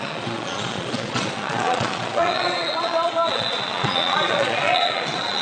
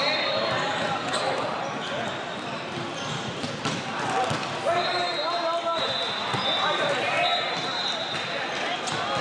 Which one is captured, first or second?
second